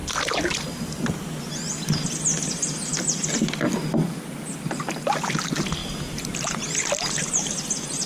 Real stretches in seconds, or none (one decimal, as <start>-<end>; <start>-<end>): 0.0-5.8; 6.6-8.1